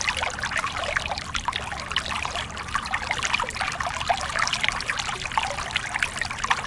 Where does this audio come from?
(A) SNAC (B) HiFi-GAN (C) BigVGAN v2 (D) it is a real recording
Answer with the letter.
D